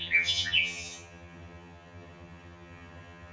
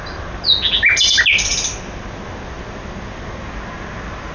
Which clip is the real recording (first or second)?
second